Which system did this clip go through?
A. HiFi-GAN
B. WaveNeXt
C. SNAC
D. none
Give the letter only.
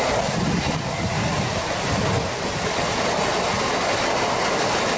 D